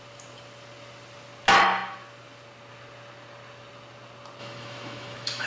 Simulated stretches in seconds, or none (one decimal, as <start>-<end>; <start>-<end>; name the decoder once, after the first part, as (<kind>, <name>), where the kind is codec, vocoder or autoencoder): 4.4-5.5 (autoencoder, DAC-VAE)